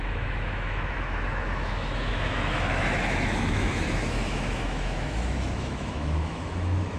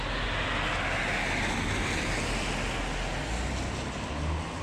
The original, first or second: second